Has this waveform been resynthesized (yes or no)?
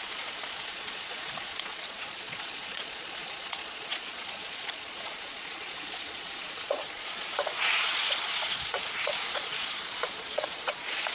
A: yes